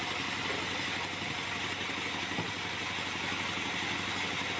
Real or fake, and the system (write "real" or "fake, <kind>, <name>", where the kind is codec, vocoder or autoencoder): real